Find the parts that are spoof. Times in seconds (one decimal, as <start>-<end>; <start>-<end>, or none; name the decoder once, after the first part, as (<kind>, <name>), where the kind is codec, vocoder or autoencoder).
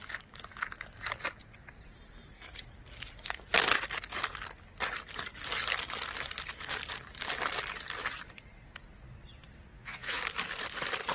9.7-10.2 (vocoder, Vocos)